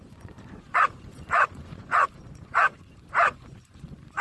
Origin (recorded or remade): remade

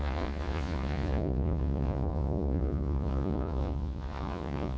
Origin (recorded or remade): remade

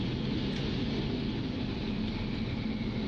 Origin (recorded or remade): recorded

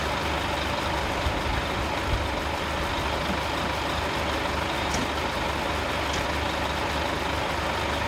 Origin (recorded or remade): recorded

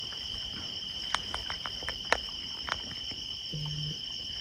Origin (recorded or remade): recorded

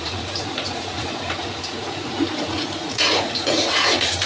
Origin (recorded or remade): remade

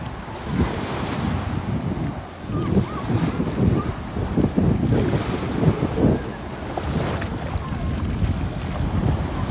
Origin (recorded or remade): recorded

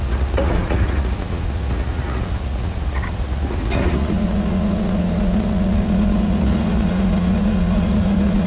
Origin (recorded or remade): remade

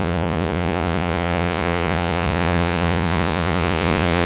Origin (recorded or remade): remade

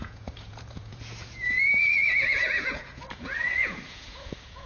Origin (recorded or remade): remade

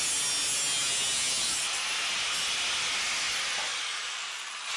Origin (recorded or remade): recorded